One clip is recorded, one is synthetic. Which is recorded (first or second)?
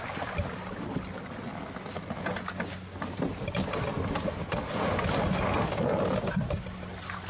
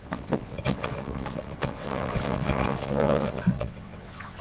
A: first